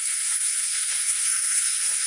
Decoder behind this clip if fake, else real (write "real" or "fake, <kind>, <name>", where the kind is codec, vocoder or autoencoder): fake, codec, SNAC